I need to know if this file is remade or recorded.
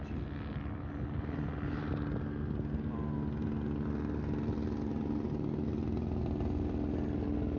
recorded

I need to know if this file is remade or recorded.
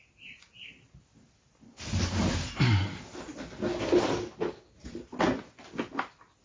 recorded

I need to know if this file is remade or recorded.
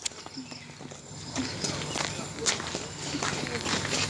recorded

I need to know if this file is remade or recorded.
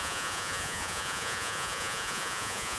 remade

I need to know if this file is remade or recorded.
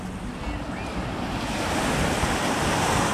recorded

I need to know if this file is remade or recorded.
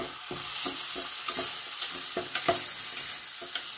recorded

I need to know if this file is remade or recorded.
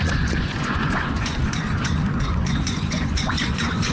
remade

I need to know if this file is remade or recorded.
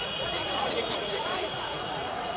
remade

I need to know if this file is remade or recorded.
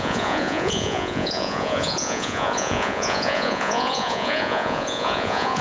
remade